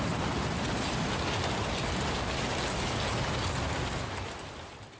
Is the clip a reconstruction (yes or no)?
no